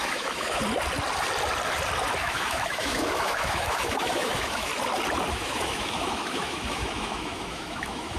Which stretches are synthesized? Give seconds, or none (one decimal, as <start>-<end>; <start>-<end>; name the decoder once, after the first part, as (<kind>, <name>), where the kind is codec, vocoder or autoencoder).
0.0-0.6 (autoencoder, DAC-VAE); 2.2-4.7; 5.3-8.2